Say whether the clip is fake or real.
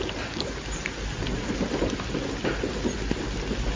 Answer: real